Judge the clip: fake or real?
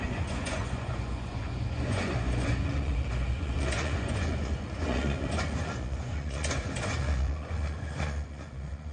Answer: fake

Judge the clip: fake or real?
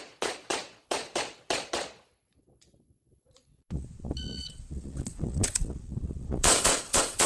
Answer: fake